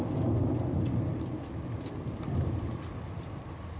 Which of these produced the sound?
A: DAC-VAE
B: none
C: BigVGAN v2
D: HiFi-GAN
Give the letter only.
B